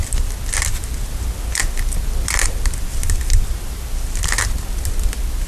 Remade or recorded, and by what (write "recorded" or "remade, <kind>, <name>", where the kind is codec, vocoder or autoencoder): recorded